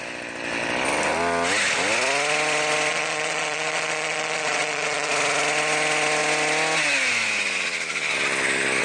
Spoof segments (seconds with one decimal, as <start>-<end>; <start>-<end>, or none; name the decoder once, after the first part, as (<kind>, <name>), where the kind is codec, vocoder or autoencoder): 2.9-5.1 (vocoder, Vocos)